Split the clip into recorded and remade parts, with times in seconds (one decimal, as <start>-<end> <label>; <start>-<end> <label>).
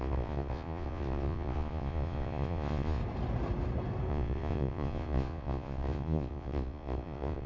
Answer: 0.0-3.0 remade; 3.0-4.1 recorded; 4.1-7.5 remade